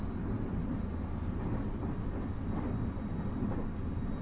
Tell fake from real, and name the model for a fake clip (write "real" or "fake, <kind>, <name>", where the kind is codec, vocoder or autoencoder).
real